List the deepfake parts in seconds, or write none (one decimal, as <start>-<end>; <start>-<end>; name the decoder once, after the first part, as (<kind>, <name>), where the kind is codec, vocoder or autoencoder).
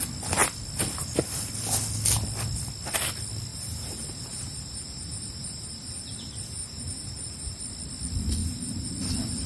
3.5-7.6 (vocoder, BigVGAN v2); 8.4-8.9